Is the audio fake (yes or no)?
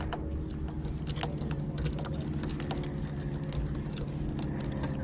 no